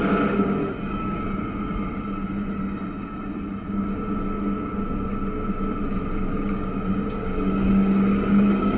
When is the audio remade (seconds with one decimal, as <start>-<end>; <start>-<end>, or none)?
0.6-1.2; 6.3-8.8